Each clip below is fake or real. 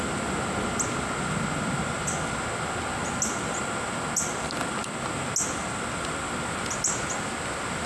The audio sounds real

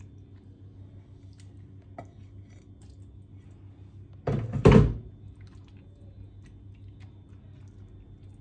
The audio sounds real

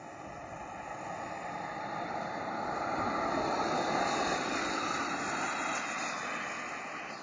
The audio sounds real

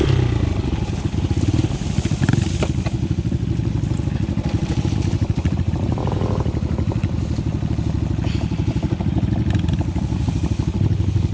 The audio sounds real